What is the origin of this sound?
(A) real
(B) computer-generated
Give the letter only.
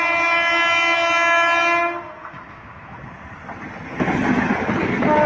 A